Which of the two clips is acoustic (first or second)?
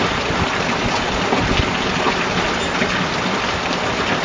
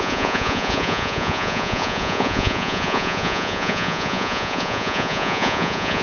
first